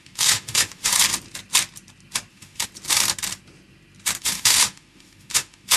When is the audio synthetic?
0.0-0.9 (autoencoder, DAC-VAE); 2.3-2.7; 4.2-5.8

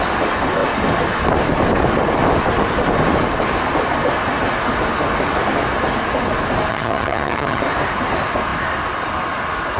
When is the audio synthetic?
6.7-7.6 (vocoder, HiFi-GAN)

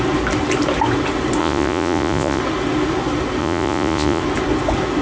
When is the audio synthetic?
1.4-2.4 (vocoder, Vocos); 3.4-4.2

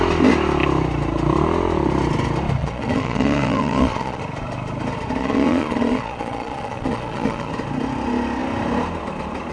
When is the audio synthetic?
2.6-4.2 (vocoder, Vocos); 5.2-7.5

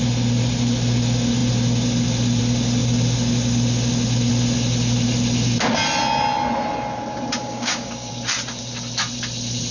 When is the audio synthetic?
7.4-8.1 (codec, DAC)